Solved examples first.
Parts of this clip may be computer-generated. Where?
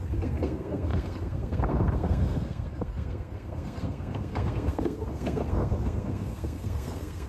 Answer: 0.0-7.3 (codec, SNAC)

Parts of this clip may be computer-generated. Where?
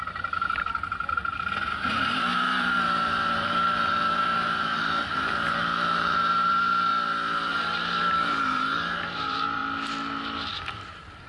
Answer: 0.0-6.9 (vocoder, BigVGAN v2); 7.5-9.6; 10.7-11.3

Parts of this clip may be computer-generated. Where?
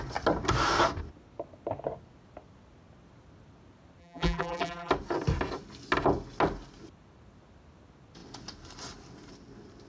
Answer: 4.0-4.9 (vocoder, BigVGAN v2)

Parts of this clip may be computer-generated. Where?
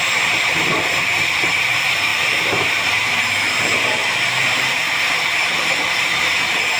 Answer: 0.0-4.0 (vocoder, BigVGAN v2); 4.5-6.8